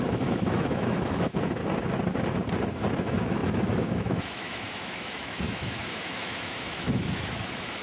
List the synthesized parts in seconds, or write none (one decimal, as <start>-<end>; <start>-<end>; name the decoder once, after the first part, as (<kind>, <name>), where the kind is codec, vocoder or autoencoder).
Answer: 0.0-1.6 (autoencoder, DAC-VAE); 3.0-7.8